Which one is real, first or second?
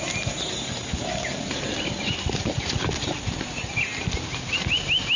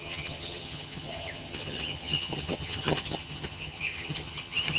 first